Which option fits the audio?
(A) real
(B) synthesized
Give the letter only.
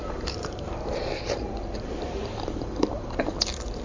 B